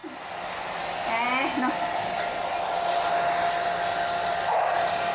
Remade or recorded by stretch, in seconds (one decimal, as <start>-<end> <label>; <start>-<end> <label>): 0.0-5.1 recorded